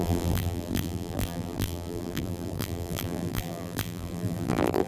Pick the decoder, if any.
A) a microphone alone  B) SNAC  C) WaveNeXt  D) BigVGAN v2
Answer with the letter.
D